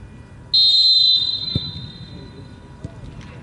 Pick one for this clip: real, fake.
real